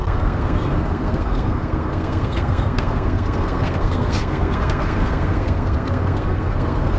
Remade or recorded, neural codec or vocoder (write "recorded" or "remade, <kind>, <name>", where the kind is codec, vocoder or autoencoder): remade, codec, SNAC